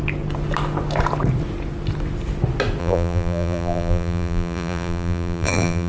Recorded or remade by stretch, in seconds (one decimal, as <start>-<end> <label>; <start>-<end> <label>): 0.0-2.8 recorded; 2.8-5.9 remade